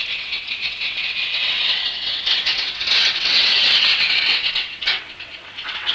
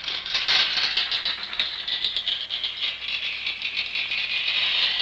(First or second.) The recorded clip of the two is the second